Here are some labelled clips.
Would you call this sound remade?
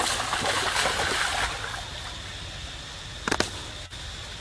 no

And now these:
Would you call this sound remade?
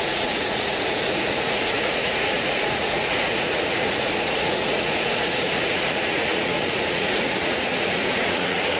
yes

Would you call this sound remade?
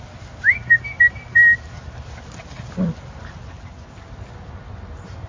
no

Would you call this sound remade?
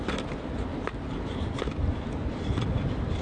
no